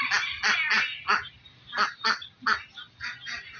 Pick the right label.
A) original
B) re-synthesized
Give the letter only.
A